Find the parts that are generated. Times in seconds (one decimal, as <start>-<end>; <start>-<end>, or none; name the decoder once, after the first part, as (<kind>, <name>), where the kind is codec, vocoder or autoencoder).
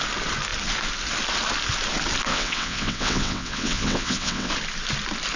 2.3-4.5 (vocoder, WaveNeXt)